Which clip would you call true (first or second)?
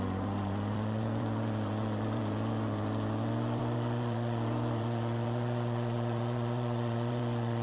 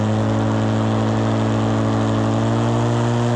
second